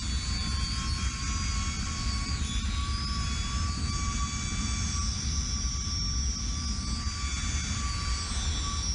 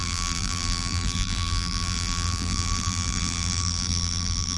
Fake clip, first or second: second